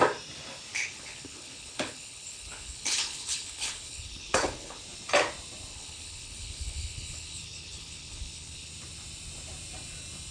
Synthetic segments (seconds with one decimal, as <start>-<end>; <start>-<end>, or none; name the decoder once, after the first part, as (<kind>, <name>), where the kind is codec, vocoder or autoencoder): 0.7-4.8 (codec, HILCodec); 5.7-8.7